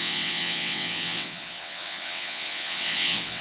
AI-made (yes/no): yes